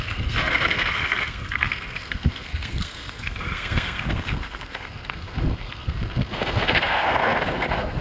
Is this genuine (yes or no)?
no